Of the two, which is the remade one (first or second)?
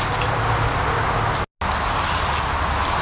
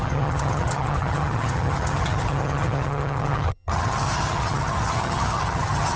second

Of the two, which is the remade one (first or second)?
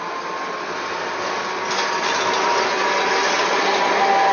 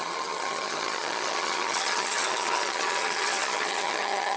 second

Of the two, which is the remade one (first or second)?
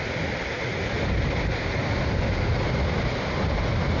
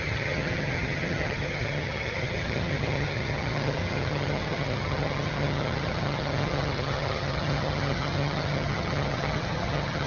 second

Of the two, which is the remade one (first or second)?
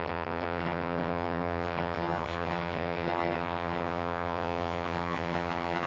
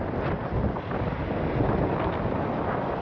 first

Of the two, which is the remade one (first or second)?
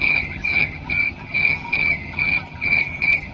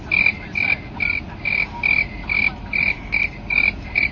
first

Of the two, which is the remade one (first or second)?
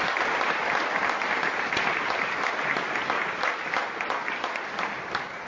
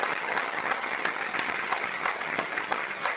second